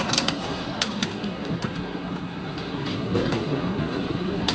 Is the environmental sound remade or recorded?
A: remade